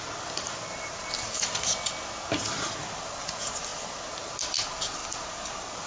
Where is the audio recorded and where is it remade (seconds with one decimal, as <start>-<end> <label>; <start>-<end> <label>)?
0.0-5.9 recorded